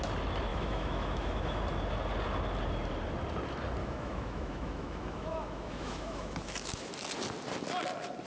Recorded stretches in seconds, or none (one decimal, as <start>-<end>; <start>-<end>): 0.0-0.5; 1.6-3.8; 6.9-8.3